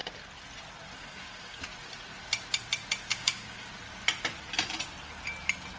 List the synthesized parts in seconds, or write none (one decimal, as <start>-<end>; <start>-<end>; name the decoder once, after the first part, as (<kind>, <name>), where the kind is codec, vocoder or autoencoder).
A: 1.0-1.6 (codec, DAC); 3.1-3.7